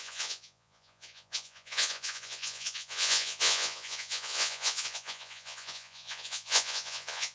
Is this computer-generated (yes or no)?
yes